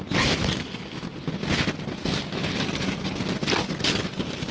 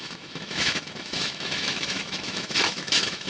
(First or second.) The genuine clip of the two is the first